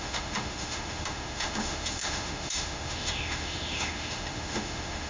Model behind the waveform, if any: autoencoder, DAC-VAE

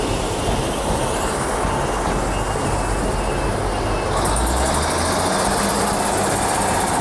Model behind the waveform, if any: none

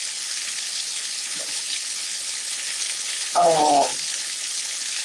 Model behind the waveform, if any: codec, HILCodec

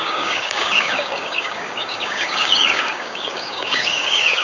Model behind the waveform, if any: codec, DAC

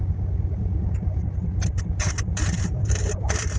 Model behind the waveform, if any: none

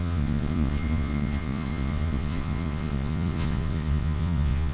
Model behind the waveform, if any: vocoder, Vocos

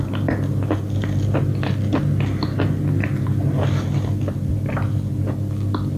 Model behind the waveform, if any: none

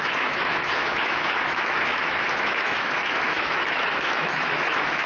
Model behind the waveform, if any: autoencoder, DAC-VAE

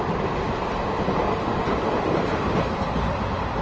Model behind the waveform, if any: none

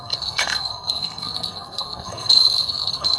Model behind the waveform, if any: codec, SNAC